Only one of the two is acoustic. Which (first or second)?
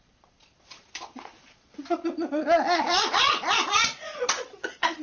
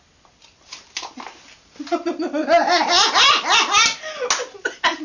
second